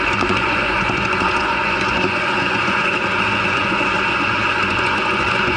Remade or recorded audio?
remade